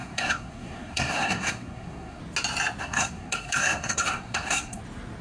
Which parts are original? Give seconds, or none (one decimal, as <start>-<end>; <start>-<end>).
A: 2.2-2.8; 4.8-5.2